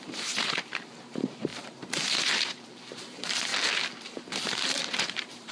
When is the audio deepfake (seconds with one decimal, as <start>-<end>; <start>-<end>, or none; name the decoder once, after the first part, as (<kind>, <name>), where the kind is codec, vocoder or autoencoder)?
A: 0.0-3.5 (vocoder, BigVGAN v2); 4.0-5.5

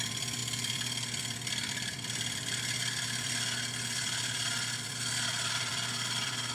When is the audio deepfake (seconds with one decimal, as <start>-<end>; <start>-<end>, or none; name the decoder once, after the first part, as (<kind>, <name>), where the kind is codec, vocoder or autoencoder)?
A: 0.0-6.5 (vocoder, BigVGAN v2)

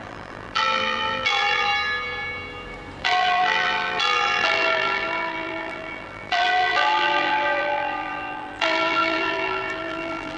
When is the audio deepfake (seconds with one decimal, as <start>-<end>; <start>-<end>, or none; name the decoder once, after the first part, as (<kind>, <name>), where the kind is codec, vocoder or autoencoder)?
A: 0.0-1.7 (vocoder, BigVGAN v2); 3.0-10.4

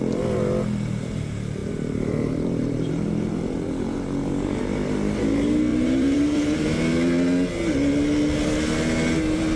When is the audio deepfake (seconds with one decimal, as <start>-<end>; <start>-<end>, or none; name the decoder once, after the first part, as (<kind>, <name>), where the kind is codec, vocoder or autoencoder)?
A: 1.6-2.9 (vocoder, BigVGAN v2); 5.7-6.8